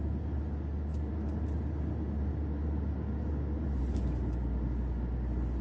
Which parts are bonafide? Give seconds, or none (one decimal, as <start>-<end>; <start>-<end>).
0.0-5.6

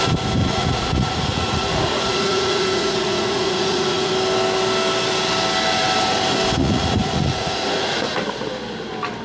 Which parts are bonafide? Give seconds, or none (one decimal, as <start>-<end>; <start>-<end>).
0.0-0.4; 4.1-6.6; 8.1-9.2

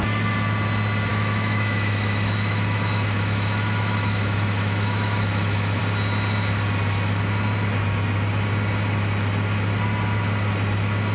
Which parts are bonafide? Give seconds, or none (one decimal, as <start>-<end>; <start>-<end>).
0.0-1.1; 5.8-11.1

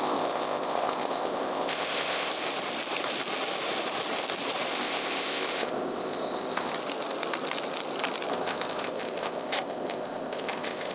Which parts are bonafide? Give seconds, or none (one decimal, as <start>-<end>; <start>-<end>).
2.3-4.7; 6.7-8.3

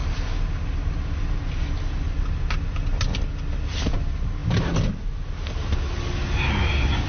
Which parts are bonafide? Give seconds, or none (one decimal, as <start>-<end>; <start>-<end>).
0.0-7.1